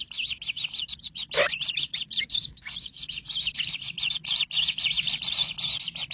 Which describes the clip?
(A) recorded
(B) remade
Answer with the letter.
A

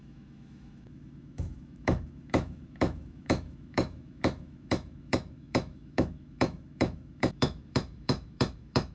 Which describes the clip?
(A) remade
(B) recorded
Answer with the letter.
A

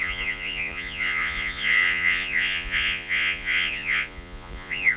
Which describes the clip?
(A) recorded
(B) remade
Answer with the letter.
B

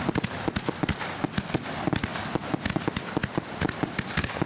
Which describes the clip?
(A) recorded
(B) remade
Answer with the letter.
A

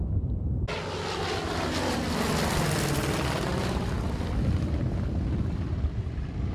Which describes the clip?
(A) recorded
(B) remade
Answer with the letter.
A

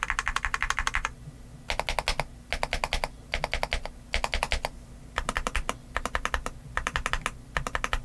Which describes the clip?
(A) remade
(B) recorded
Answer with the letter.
B